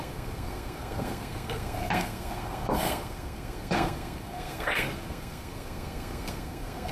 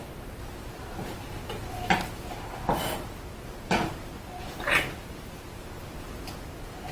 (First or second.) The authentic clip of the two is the second